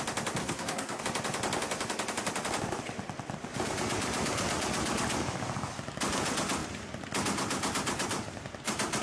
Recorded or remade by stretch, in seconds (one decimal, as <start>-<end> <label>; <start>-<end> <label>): 0.0-0.4 recorded; 0.4-1.0 remade; 1.0-9.0 recorded